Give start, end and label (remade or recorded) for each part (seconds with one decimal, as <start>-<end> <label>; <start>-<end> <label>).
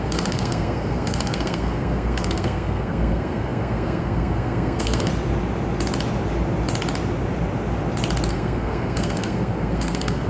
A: 0.0-5.1 remade; 5.1-8.3 recorded; 8.3-10.3 remade